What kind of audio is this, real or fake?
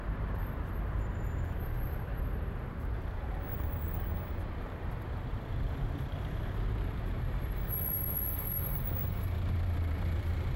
fake